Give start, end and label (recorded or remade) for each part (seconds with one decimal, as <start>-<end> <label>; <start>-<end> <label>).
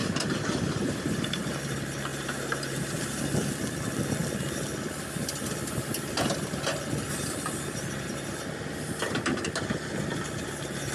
0.0-1.4 remade; 1.4-2.1 recorded; 2.1-3.2 remade; 3.2-10.9 recorded